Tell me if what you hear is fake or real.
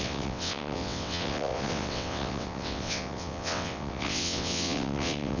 fake